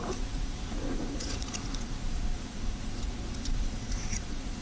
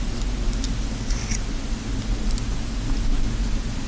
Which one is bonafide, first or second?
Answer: second